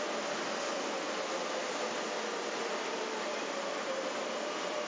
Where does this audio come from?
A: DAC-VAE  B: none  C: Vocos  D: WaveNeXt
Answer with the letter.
B